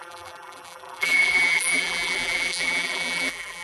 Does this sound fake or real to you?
fake